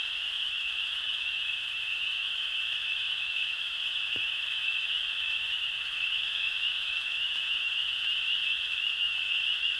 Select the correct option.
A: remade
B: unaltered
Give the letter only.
A